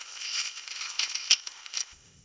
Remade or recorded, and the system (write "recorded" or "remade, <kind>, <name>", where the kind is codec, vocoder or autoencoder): remade, codec, ZipCodec